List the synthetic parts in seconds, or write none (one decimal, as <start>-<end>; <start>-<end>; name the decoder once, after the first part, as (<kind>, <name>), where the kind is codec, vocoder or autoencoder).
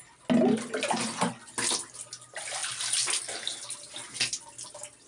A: none